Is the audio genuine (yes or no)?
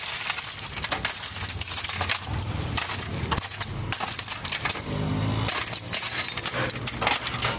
yes